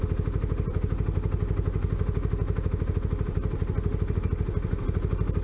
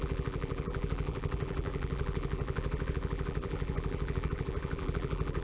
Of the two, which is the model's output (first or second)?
second